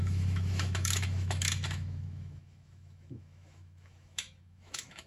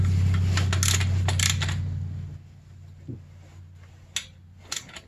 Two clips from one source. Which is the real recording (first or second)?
second